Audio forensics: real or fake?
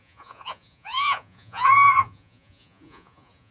fake